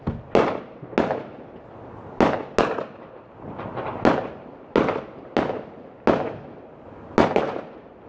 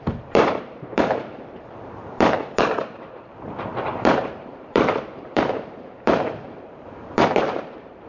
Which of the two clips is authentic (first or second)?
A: first